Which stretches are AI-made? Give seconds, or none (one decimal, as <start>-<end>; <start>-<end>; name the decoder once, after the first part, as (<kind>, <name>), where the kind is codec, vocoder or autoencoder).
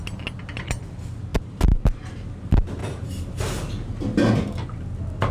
2.8-3.7 (vocoder, BigVGAN v2)